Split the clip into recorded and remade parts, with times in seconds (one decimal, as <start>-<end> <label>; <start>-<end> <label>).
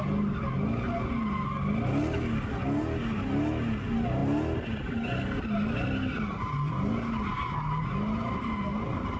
0.0-9.2 recorded